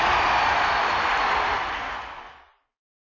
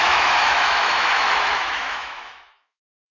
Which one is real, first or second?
first